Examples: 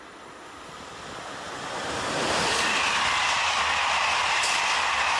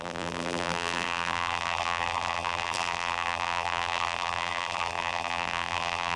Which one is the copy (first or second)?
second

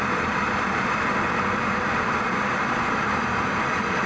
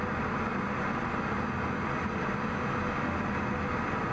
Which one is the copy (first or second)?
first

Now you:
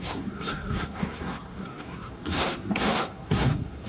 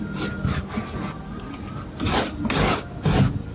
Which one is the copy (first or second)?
first